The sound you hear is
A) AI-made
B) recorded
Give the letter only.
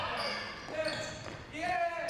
B